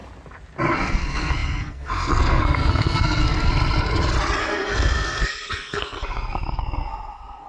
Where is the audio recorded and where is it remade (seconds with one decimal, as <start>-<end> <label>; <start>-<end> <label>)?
0.0-0.7 recorded; 0.7-3.5 remade; 3.5-4.4 recorded; 4.4-7.5 remade